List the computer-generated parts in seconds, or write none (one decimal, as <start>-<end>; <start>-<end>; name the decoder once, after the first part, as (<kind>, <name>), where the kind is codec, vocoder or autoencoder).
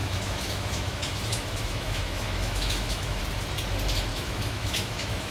0.0-3.2 (autoencoder, DAC-VAE); 4.1-5.3